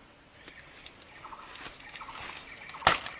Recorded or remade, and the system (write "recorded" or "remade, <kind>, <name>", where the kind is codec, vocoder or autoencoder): recorded